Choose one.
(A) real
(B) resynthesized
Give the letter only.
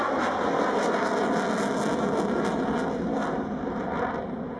A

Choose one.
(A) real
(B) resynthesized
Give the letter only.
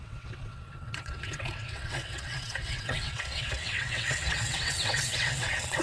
B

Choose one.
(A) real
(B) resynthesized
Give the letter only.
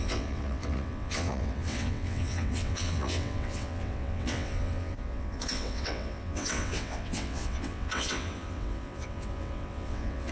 B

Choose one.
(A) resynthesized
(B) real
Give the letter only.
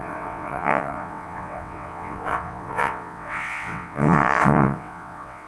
A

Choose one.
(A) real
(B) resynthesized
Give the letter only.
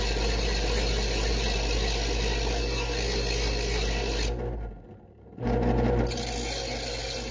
A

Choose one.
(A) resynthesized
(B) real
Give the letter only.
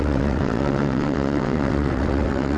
A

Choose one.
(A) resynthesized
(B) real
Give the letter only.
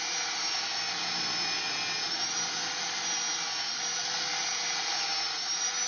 B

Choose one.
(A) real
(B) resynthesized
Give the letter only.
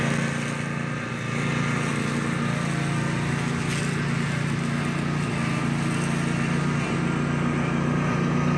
A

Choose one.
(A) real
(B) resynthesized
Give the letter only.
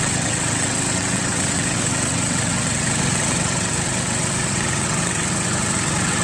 B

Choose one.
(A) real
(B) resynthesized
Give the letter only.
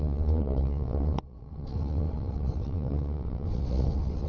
B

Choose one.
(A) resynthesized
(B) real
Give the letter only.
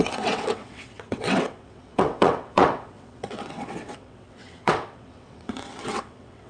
A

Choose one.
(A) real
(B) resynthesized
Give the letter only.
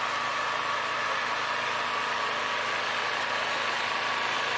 A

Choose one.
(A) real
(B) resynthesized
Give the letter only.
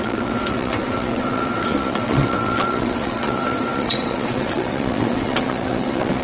B